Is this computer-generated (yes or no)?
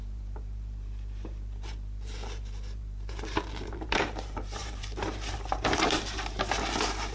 yes